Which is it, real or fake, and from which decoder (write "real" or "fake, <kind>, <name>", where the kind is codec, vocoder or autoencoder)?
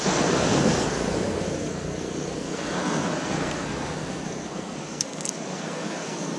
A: fake, codec, SNAC